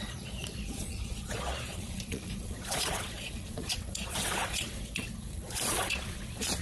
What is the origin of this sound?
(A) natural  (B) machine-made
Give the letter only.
B